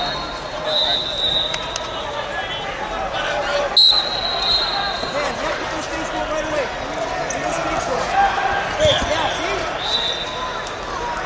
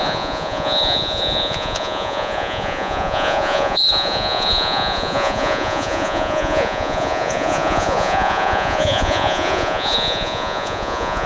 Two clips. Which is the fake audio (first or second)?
second